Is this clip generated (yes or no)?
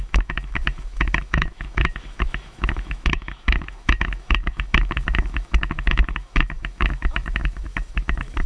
yes